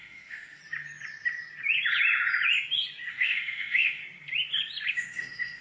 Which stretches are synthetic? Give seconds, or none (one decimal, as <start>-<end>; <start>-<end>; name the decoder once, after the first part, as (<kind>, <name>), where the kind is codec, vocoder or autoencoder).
0.0-0.6 (autoencoder, DAC-VAE); 3.1-4.0; 4.9-5.6

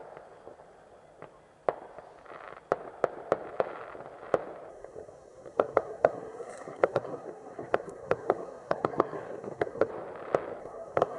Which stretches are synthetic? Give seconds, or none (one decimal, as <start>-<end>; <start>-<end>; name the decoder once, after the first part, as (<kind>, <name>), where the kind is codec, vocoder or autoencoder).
4.7-9.9 (codec, SNAC); 10.6-11.2

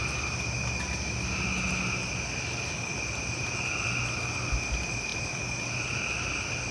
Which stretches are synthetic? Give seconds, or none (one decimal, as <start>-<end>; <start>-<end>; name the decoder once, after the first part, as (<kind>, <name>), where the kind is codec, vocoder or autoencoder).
none

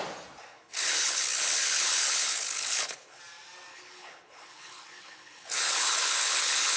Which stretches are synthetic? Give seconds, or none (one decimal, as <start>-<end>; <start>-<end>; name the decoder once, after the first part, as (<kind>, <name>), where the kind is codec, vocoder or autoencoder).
0.5-3.2 (codec, HILCodec); 3.7-6.8